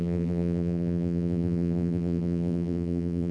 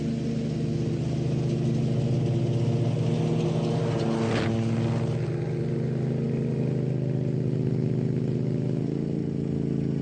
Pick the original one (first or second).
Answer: second